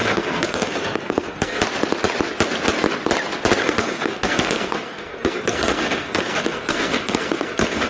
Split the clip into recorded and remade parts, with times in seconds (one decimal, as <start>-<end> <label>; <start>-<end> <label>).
0.0-1.6 remade; 1.6-3.6 recorded; 3.6-7.9 remade